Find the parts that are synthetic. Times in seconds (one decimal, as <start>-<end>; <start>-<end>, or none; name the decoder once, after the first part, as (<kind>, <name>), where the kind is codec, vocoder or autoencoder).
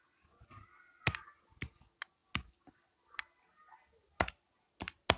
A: none